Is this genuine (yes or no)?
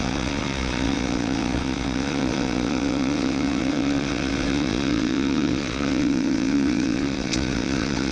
no